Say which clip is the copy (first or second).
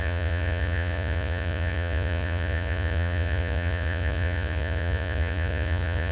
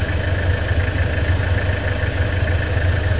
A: first